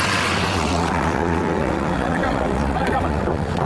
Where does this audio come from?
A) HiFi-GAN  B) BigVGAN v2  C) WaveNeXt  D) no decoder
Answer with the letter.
C